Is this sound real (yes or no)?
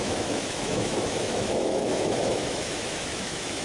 no